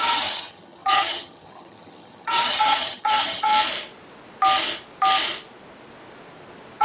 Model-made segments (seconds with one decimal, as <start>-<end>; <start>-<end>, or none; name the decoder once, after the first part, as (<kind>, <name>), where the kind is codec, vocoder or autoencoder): 0.0-3.5 (vocoder, HiFi-GAN)